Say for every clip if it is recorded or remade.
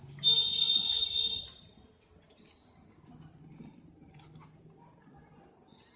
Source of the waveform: recorded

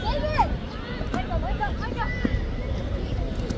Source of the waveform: recorded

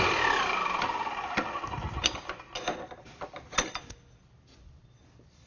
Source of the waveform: recorded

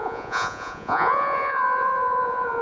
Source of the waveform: remade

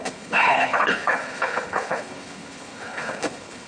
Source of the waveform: remade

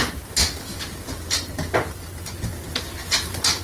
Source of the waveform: recorded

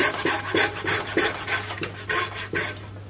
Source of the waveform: recorded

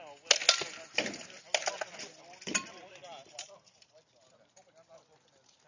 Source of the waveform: recorded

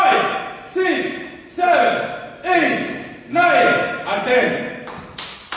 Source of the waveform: recorded